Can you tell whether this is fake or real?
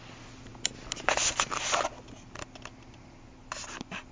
real